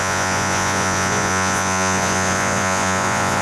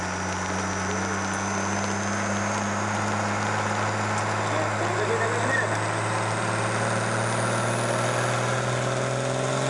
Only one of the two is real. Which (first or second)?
second